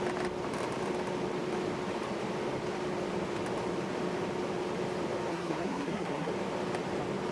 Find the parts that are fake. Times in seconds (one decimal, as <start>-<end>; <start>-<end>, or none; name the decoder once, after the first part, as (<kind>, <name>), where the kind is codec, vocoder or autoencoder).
5.3-6.3 (codec, SNAC)